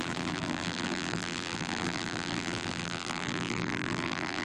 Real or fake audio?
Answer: fake